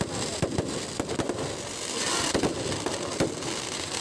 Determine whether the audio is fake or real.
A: fake